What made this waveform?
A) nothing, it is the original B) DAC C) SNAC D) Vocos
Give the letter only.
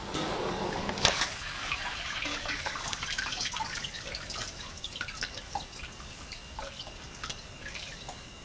B